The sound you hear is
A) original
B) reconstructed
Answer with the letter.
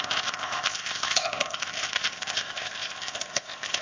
B